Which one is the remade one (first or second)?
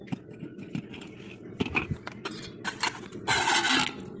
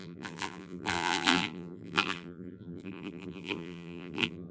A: second